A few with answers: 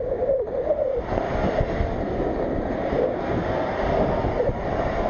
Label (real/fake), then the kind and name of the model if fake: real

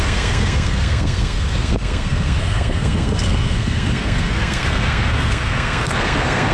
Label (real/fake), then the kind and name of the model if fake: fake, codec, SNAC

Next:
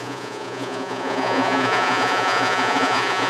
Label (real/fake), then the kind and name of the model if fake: fake, vocoder, Vocos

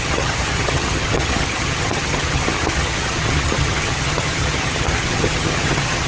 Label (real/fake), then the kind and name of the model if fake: fake, vocoder, HiFi-GAN